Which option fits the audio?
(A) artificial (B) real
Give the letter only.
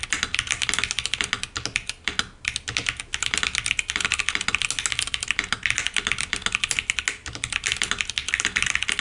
B